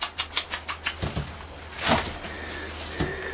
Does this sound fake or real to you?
real